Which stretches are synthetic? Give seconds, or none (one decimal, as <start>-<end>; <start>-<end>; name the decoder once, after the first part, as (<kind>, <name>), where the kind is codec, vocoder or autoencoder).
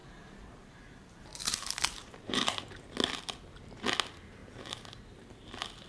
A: 0.0-2.6 (vocoder, BigVGAN v2); 4.4-5.3